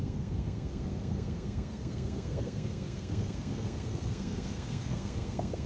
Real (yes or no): no